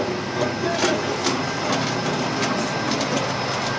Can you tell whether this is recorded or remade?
recorded